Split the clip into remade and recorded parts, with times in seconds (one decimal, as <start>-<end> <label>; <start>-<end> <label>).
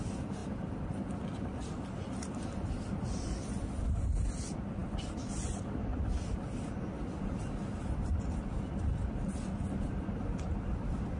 0.0-11.2 recorded